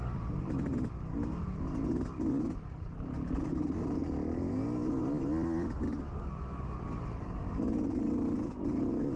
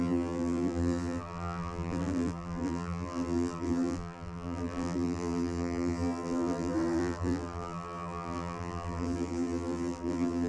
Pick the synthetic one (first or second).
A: second